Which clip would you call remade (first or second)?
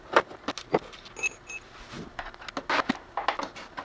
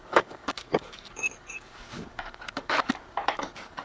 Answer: second